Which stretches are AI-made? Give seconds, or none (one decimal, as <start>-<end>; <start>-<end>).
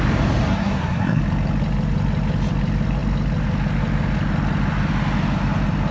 0.5-1.2